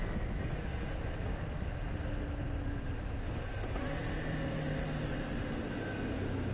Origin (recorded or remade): recorded